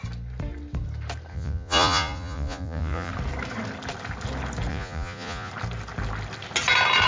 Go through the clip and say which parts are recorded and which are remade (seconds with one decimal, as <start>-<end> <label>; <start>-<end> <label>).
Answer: 0.0-1.3 recorded; 1.3-3.1 remade; 3.1-4.7 recorded; 4.7-5.5 remade; 5.5-7.1 recorded